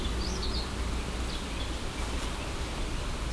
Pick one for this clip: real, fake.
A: real